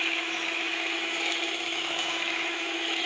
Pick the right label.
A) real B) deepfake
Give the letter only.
B